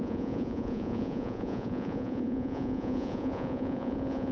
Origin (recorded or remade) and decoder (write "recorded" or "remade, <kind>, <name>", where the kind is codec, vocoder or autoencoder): remade, vocoder, Vocos